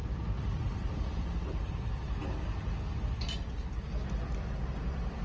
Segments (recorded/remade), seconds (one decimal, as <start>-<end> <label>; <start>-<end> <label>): 0.0-5.2 recorded